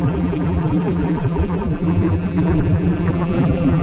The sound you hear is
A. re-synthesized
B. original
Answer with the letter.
A